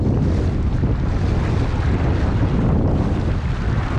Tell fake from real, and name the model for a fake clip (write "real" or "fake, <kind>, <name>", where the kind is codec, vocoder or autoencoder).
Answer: real